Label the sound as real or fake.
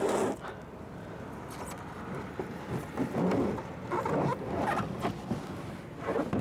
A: real